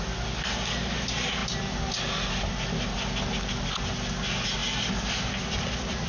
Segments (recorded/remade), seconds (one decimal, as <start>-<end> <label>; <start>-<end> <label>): 0.0-4.6 recorded; 4.6-6.1 remade